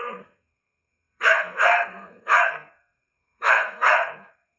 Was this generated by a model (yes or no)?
yes